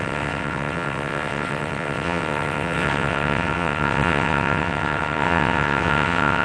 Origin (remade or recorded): remade